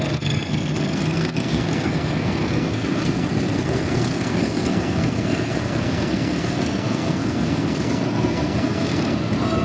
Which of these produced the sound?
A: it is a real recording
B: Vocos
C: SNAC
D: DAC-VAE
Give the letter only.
C